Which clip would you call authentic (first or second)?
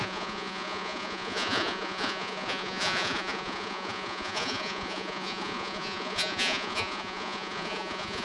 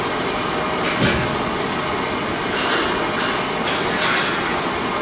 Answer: second